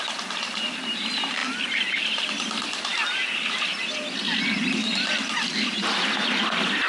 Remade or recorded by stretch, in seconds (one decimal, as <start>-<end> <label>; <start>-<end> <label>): 0.0-6.9 recorded